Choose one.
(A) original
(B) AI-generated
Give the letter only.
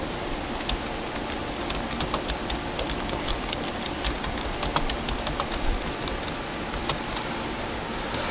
B